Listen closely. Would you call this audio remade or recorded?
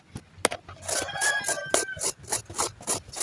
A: recorded